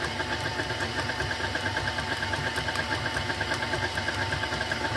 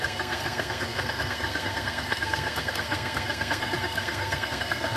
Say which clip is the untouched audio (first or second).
first